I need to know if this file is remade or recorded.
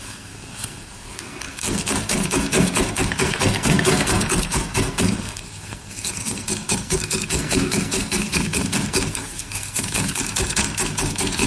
remade